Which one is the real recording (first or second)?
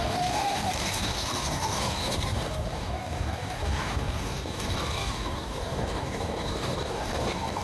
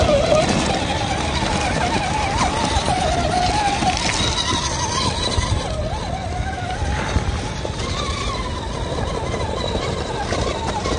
second